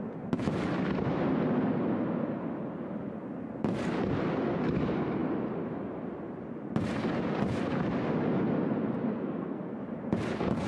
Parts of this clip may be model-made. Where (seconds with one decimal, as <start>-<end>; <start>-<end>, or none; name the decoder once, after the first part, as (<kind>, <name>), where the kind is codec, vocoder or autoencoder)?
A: 9.1-9.8 (codec, SNAC)